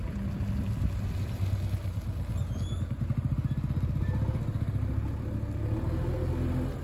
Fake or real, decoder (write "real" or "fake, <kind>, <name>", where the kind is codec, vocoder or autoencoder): real